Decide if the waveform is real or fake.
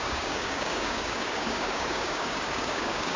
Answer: fake